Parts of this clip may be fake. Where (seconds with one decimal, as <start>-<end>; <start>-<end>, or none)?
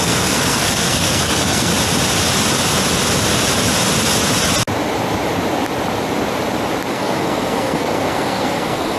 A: 0.0-1.7; 6.9-9.0